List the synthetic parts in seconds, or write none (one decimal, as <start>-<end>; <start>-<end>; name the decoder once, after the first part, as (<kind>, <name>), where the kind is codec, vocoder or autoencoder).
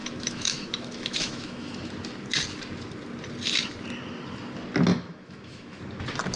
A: 0.0-1.8 (autoencoder, DAC-VAE); 4.9-5.8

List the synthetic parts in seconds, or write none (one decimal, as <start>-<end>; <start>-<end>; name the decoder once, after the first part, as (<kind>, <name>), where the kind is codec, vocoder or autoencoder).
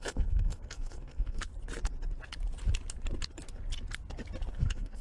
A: 0.0-1.5 (codec, SNAC); 4.5-5.0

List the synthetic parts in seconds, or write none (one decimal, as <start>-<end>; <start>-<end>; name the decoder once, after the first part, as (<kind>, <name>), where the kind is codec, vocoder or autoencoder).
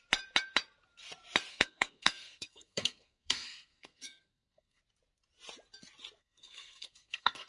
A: 1.5-4.8 (codec, SNAC); 6.2-7.5